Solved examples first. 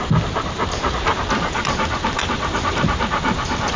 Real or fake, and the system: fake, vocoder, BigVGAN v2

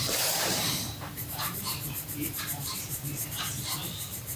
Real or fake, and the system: fake, vocoder, BigVGAN v2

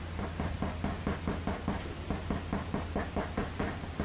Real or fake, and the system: real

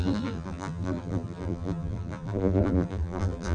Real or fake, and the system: fake, vocoder, BigVGAN v2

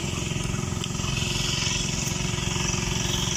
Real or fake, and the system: real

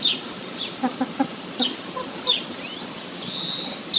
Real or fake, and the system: fake, vocoder, BigVGAN v2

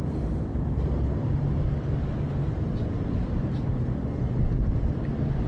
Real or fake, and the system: real